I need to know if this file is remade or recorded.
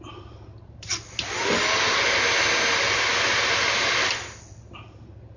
recorded